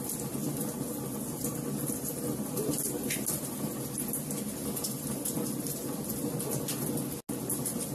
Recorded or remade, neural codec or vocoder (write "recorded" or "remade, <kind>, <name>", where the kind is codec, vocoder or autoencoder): recorded